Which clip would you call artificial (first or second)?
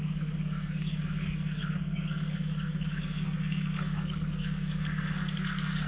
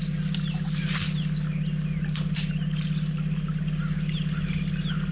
first